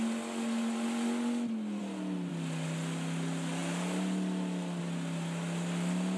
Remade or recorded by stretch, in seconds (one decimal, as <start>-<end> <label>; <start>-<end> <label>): 0.0-6.2 recorded